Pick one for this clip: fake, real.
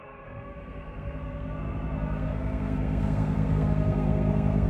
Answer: fake